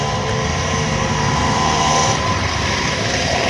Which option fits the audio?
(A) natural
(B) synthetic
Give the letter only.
B